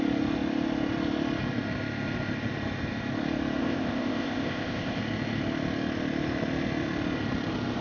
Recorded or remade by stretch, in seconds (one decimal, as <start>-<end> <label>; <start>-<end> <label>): 0.0-3.6 recorded; 3.6-5.0 remade; 5.0-7.8 recorded